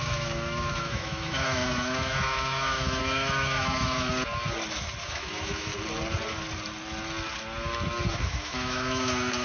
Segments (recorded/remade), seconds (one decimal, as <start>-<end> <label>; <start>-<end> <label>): 0.0-4.1 remade; 4.1-5.0 recorded; 5.0-5.7 remade; 5.7-8.1 recorded; 8.1-9.4 remade